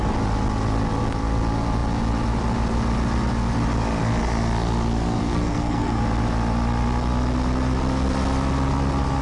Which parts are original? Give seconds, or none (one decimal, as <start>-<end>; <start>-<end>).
0.0-5.2; 6.0-9.2

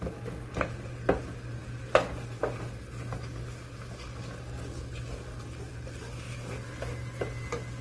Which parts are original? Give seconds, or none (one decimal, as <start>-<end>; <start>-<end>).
0.0-7.8

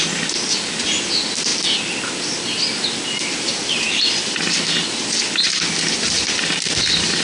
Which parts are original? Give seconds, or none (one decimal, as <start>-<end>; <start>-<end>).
0.0-7.2

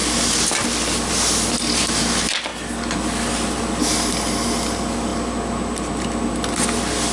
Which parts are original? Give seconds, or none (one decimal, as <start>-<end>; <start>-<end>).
0.0-7.1

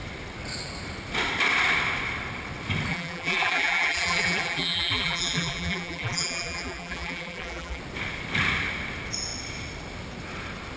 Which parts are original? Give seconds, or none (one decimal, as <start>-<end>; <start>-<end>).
0.0-2.9; 7.8-10.8

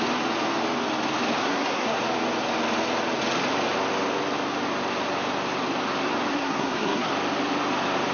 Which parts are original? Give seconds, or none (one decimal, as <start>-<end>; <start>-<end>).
0.0-1.4; 2.0-6.3; 7.1-8.1

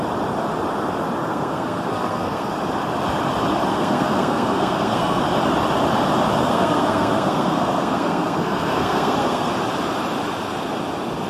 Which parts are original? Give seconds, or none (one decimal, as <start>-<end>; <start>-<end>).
0.0-1.2; 2.5-3.7; 5.2-6.4; 9.5-11.3